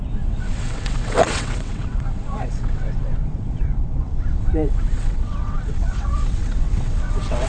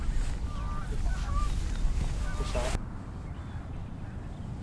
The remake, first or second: first